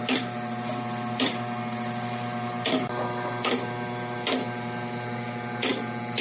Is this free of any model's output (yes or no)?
yes